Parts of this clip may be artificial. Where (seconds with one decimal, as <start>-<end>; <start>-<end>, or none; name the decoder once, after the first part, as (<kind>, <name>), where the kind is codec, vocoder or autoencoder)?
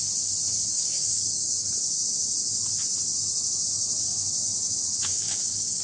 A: 0.7-1.7 (codec, DAC); 5.1-5.8